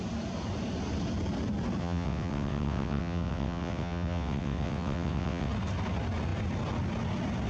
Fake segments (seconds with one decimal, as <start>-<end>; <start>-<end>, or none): 1.8-5.5